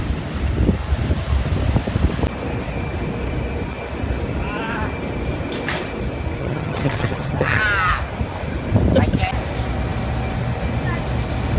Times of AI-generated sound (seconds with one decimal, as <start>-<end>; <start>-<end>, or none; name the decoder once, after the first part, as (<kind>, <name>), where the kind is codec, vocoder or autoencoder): 6.4-7.6 (vocoder, HiFi-GAN)